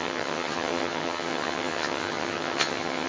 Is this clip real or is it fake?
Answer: fake